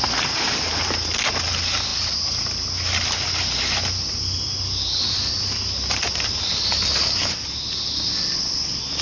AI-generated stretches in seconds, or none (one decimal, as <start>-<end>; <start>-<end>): none